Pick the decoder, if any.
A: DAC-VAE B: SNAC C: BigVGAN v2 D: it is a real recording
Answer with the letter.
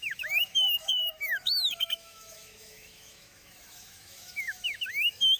A